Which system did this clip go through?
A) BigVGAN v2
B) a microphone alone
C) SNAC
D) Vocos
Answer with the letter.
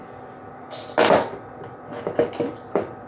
B